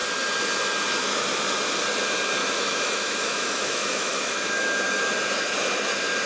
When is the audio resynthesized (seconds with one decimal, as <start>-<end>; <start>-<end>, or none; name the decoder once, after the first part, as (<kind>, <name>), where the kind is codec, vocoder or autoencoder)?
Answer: 2.4-5.1 (autoencoder, DAC-VAE)